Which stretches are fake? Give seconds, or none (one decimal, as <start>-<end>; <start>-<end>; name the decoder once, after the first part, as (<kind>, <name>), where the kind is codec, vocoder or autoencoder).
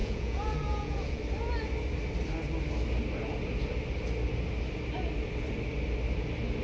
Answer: 0.0-1.2 (vocoder, Vocos)